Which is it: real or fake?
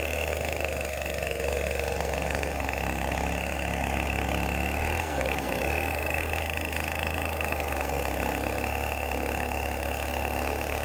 fake